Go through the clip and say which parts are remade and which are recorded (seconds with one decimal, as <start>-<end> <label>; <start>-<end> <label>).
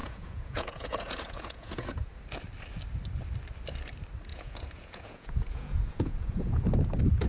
0.0-2.1 remade; 2.1-4.3 recorded; 4.3-6.6 remade; 6.6-7.3 recorded